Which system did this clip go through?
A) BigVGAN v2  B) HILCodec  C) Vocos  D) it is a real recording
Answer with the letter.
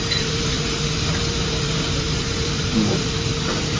A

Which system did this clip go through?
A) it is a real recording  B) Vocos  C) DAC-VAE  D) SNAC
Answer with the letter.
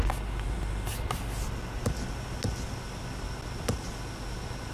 A